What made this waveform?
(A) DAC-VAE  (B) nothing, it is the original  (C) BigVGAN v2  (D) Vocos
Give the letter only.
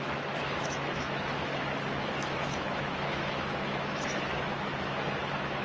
A